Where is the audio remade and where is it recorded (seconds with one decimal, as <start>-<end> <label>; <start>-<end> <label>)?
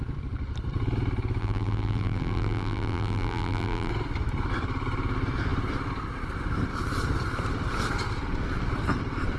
0.0-1.4 recorded; 1.4-3.9 remade; 3.9-9.4 recorded